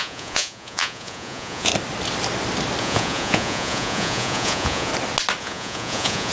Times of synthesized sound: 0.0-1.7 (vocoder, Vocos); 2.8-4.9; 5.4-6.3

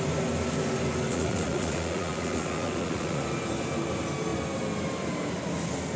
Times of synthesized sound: 1.1-3.2 (vocoder, Vocos)

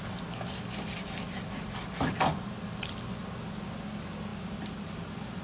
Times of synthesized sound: none